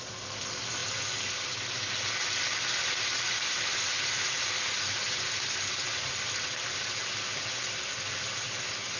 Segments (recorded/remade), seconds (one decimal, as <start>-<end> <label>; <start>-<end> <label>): 0.0-9.0 recorded